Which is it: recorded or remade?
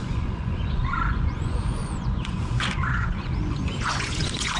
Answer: remade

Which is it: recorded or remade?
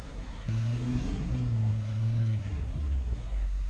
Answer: remade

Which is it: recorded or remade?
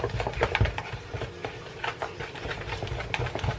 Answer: recorded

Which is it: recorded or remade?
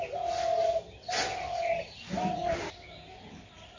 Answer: recorded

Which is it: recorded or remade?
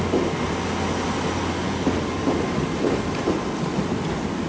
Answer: recorded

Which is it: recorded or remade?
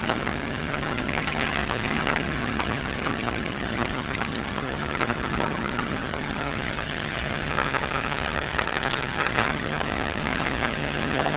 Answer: remade